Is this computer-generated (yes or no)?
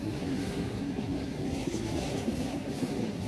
yes